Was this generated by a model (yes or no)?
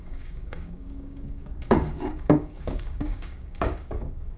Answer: yes